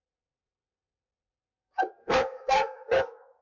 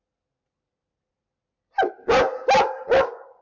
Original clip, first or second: second